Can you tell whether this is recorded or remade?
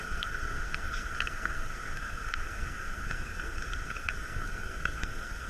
remade